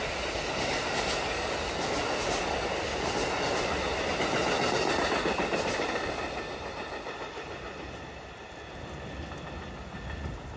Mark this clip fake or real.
real